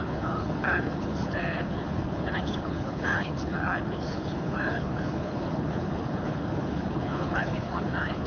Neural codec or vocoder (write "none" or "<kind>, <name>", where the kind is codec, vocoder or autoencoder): codec, HILCodec